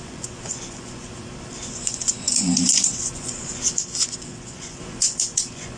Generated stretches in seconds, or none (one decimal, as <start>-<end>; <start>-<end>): 0.0-1.1; 1.7-5.8